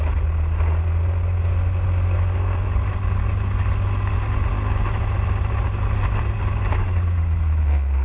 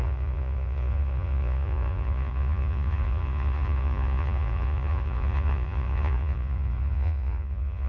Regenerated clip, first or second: second